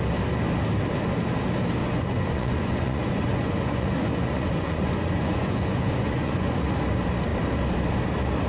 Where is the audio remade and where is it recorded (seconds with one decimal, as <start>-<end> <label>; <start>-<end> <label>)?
0.0-1.8 recorded; 1.8-6.6 remade; 6.6-8.5 recorded